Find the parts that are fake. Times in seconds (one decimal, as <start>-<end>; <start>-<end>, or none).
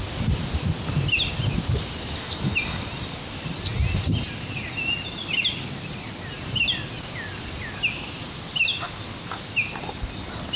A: none